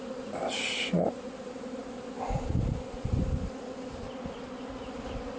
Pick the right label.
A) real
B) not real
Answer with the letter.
A